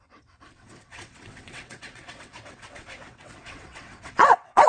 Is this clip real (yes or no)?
no